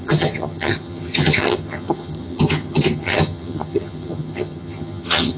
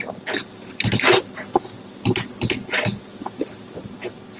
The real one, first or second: second